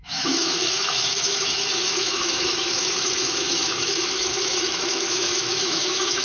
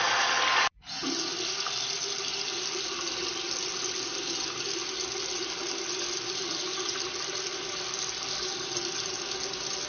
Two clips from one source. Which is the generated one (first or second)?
first